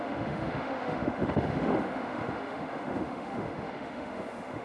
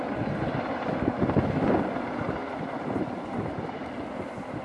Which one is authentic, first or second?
second